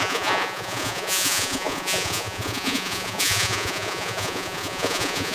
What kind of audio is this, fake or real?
fake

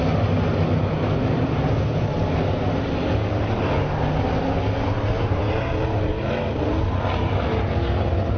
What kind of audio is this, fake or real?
real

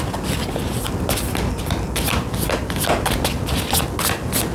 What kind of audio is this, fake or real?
real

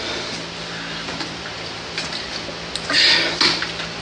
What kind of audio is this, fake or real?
real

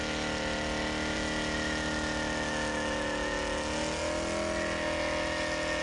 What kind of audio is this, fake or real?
real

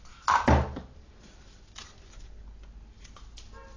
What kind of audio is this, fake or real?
real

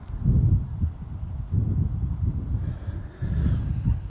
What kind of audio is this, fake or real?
real